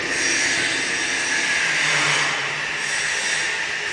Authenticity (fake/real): real